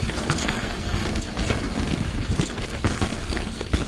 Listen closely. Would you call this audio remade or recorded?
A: remade